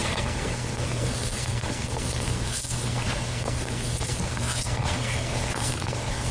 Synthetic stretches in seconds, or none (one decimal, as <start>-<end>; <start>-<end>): 0.0-6.3